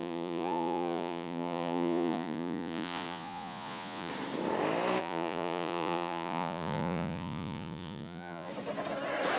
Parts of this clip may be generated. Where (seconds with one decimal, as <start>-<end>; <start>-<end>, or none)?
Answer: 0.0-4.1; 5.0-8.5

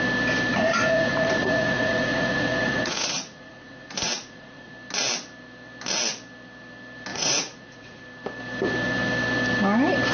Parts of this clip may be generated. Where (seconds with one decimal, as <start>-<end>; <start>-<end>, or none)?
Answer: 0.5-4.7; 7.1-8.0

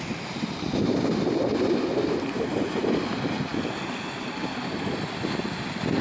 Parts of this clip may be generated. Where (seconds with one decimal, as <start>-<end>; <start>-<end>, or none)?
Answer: none

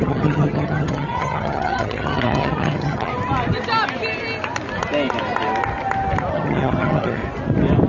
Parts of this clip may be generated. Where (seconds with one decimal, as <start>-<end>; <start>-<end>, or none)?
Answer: 0.0-3.1; 6.3-7.2

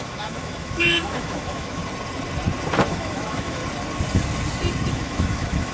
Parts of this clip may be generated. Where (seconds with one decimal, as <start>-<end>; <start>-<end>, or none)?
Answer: 0.0-1.8; 2.9-3.6; 4.9-5.7

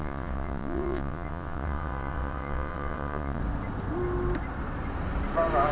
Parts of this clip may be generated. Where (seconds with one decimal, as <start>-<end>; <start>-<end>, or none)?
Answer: 0.0-3.4